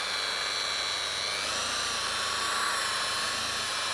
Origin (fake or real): real